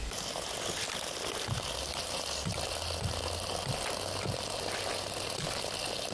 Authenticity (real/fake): real